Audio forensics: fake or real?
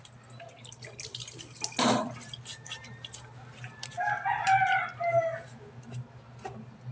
real